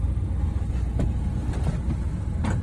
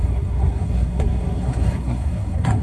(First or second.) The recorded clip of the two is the first